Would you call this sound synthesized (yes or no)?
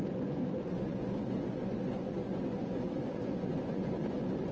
yes